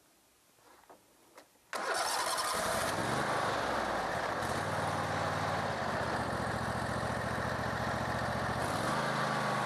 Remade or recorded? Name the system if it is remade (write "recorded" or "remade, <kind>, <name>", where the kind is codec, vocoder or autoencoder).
recorded